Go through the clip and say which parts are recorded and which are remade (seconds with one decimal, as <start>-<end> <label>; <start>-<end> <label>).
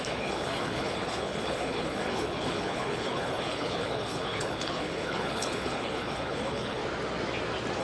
0.0-6.8 remade; 6.8-7.8 recorded